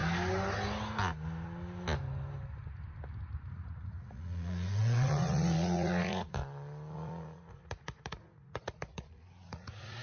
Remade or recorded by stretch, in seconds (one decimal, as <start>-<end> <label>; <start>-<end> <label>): 0.0-3.5 recorded; 3.5-6.4 remade; 6.4-6.9 recorded; 6.9-10.0 remade